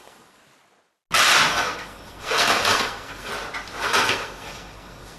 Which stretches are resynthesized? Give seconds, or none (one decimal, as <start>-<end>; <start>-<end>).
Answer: 0.0-0.4; 1.5-3.3; 3.8-5.2